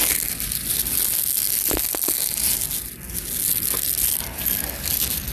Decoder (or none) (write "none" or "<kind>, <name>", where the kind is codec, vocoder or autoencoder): none